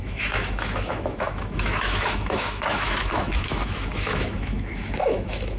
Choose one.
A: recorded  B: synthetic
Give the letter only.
B